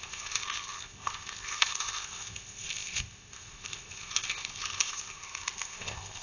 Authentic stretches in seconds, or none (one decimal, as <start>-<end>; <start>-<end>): none